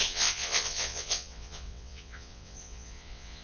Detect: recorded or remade remade